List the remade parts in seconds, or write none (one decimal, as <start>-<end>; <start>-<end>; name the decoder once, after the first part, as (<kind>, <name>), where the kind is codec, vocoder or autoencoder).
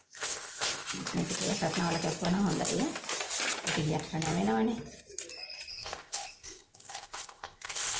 0.0-1.0 (codec, ZipCodec); 5.7-8.0